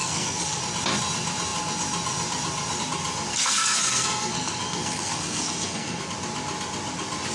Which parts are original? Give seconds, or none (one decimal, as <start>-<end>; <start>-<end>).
0.6-3.3; 6.0-7.3